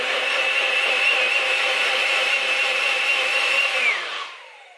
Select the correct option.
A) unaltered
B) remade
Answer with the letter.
B